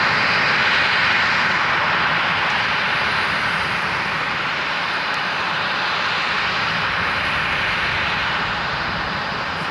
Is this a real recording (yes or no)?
yes